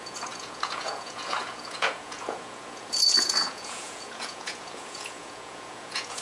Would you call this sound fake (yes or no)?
yes